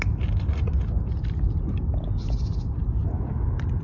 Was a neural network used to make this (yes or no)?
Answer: no